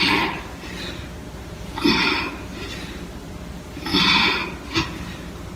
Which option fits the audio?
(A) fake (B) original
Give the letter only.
B